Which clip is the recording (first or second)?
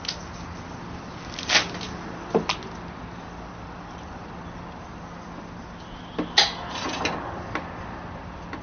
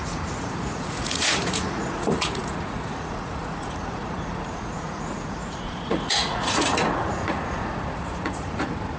first